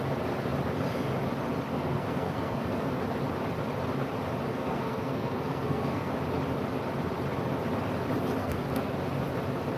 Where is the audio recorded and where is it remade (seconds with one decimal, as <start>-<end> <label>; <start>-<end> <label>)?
0.0-1.7 recorded; 1.7-3.0 remade; 3.0-4.5 recorded; 4.5-6.1 remade; 6.1-8.4 recorded; 8.4-8.9 remade; 8.9-9.8 recorded